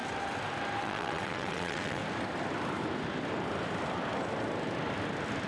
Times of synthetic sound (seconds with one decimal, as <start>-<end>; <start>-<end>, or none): 0.8-2.0